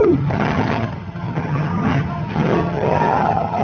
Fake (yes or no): yes